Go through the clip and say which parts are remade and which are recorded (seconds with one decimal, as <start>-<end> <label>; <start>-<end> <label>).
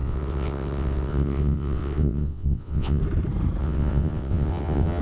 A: 0.0-3.0 remade; 3.0-3.6 recorded; 3.6-5.0 remade